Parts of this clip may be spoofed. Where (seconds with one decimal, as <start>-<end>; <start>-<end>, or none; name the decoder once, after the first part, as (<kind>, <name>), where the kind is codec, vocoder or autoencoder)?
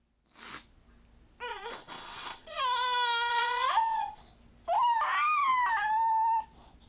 1.5-2.6 (vocoder, WaveNeXt); 3.3-4.2